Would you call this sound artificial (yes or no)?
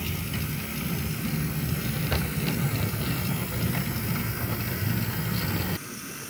no